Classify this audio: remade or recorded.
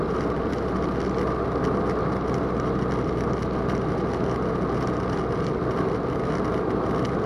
recorded